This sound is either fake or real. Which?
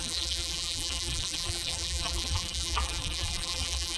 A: fake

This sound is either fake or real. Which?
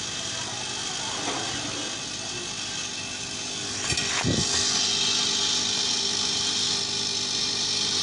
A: real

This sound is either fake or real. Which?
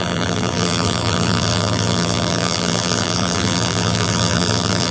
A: fake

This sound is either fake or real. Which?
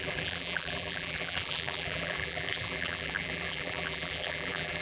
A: fake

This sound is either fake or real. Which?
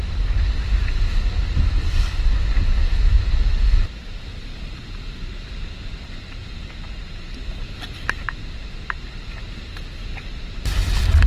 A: real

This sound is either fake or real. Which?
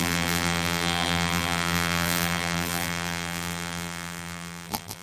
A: fake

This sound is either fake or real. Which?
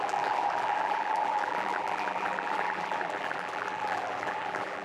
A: fake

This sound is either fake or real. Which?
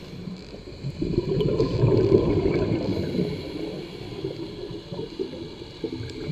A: fake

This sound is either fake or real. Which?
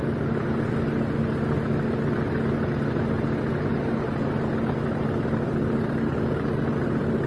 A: real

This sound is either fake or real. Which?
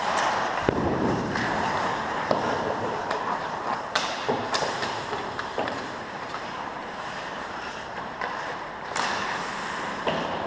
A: fake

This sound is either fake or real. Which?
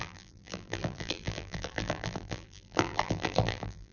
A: fake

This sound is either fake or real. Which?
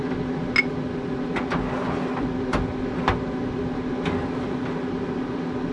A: real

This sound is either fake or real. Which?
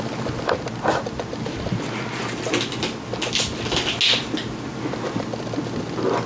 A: real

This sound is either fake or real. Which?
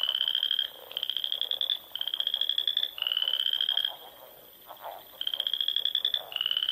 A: real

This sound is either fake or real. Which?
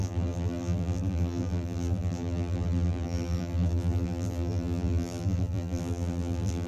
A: fake